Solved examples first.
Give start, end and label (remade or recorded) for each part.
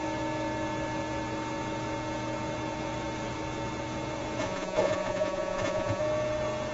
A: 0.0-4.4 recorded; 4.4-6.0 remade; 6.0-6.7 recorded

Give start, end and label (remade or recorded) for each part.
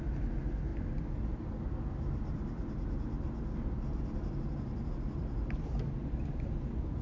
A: 0.0-7.0 recorded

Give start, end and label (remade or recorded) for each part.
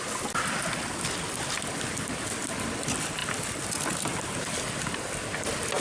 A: 0.0-5.8 recorded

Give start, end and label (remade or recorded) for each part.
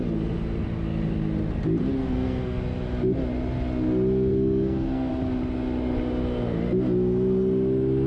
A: 0.0-2.0 recorded; 2.0-2.6 remade; 2.6-4.3 recorded; 4.3-5.1 remade; 5.1-8.1 recorded